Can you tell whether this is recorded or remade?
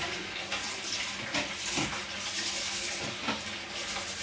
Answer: recorded